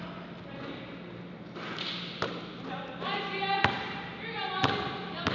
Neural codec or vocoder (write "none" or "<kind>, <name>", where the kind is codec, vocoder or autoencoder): none